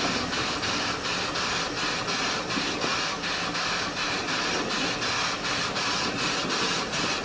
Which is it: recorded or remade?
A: recorded